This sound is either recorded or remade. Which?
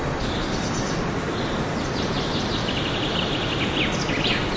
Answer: recorded